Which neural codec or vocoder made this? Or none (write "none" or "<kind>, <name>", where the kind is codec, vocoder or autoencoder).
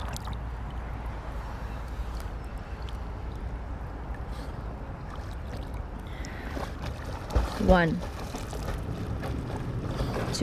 none